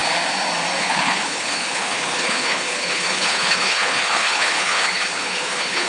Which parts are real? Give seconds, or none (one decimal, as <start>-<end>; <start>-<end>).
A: 0.0-0.8